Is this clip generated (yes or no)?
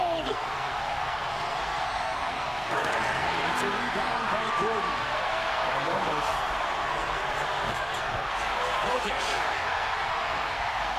yes